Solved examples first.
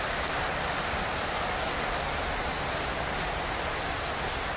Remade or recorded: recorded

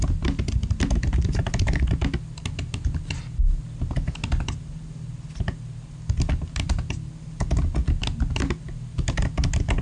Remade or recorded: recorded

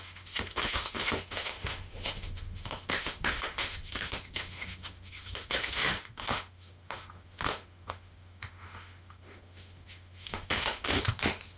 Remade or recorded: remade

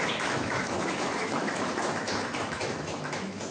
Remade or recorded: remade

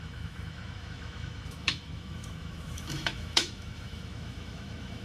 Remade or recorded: remade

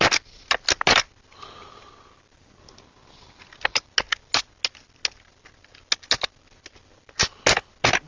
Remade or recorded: recorded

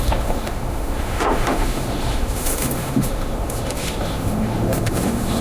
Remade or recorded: remade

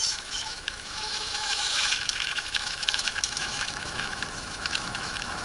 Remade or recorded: remade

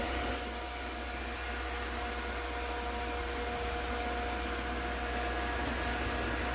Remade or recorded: recorded